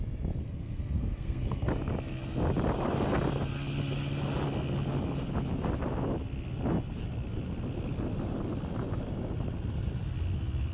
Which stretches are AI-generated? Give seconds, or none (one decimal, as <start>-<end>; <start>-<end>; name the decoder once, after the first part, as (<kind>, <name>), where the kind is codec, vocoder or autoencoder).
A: 0.4-1.7 (codec, SNAC)